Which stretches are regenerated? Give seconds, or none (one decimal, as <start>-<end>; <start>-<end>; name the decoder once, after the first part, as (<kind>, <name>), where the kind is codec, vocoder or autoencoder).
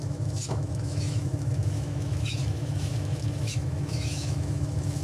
0.0-5.0 (autoencoder, DAC-VAE)